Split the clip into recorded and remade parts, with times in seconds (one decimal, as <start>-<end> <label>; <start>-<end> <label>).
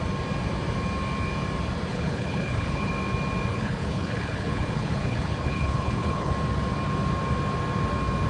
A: 0.0-1.9 recorded; 1.9-2.9 remade; 2.9-3.5 recorded; 3.5-6.3 remade; 6.3-8.3 recorded